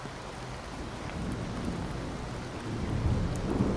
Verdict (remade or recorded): recorded